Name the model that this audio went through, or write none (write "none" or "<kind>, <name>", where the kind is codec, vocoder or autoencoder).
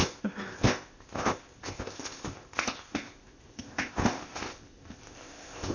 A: codec, ZipCodec